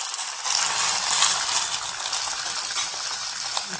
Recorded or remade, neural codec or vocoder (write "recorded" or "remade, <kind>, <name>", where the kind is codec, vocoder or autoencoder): recorded